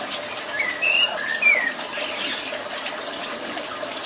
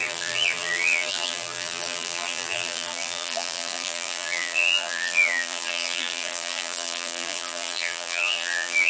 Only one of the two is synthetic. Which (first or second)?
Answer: second